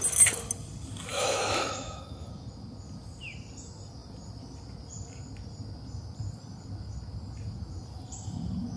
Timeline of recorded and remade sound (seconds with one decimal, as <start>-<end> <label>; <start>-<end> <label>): 0.0-1.1 recorded; 1.1-2.3 remade; 2.3-8.8 recorded